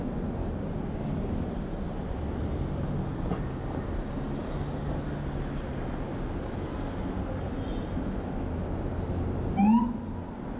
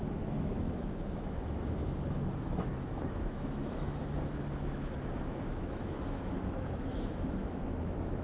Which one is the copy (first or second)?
second